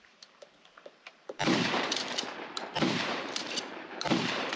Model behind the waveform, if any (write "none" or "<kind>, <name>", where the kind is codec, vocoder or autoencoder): vocoder, BigVGAN v2